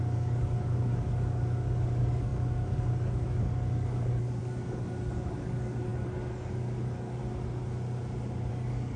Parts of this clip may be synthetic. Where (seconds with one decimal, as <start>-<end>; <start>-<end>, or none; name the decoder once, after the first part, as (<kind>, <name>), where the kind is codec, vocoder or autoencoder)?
0.0-7.2 (codec, DAC); 8.5-9.0